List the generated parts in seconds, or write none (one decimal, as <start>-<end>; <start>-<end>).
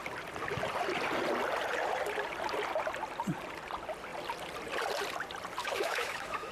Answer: 5.6-6.5